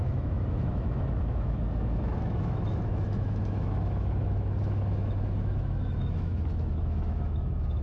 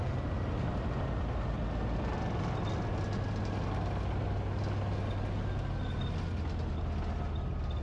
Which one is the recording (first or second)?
second